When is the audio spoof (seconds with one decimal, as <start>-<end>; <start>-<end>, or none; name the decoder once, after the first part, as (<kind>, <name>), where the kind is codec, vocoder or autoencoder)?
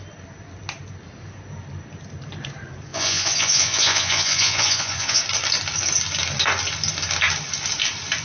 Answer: 2.9-5.2 (vocoder, Vocos)